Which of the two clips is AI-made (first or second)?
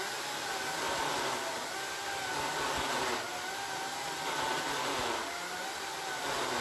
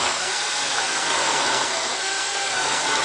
second